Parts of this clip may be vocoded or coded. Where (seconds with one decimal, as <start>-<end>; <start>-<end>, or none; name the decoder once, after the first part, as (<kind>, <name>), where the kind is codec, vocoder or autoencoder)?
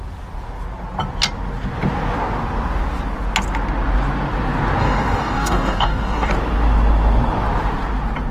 4.8-6.3 (codec, DAC)